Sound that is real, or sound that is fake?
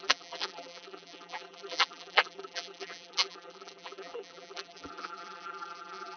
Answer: fake